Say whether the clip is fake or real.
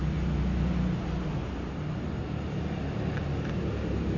real